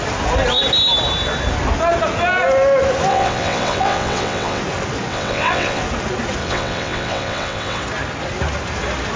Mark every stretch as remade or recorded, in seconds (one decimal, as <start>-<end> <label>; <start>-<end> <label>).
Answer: 0.0-3.1 recorded; 3.1-4.6 remade; 4.6-5.1 recorded; 5.1-5.8 remade; 5.8-6.4 recorded; 6.4-7.8 remade; 7.8-9.2 recorded